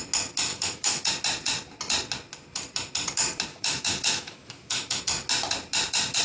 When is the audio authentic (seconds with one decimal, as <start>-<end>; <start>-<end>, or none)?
0.0-0.5; 1.1-3.5; 5.0-6.2